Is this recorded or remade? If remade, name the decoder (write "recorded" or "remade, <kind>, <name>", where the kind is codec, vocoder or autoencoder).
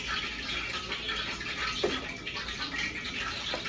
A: recorded